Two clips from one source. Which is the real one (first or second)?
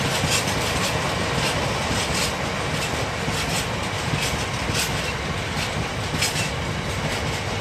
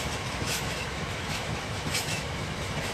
first